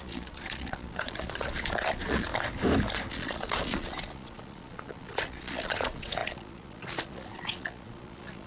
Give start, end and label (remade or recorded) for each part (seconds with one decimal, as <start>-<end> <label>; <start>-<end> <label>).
0.0-2.3 remade; 2.3-3.1 recorded; 3.1-8.5 remade